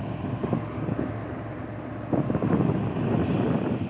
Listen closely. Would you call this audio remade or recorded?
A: recorded